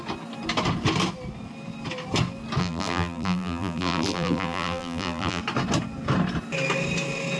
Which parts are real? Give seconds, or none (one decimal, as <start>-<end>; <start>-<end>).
0.0-2.6; 5.4-7.4